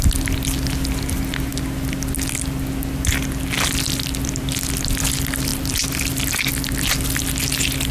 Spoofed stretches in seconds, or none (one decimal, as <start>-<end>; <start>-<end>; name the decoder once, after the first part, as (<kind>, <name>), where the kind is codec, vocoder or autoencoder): none